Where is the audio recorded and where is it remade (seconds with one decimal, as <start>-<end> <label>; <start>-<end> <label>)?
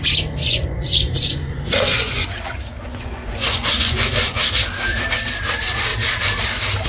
0.0-0.4 recorded; 0.4-4.4 remade; 4.4-6.9 recorded